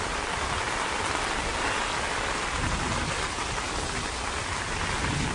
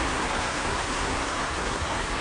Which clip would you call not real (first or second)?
second